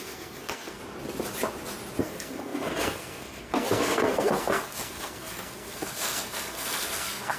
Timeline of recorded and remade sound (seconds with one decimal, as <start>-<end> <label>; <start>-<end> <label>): 0.0-0.8 remade; 0.8-2.0 recorded; 2.0-7.4 remade